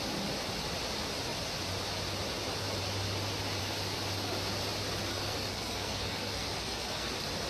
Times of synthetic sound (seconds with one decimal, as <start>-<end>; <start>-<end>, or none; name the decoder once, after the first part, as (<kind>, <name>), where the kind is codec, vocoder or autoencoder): 5.1-7.1 (codec, SNAC)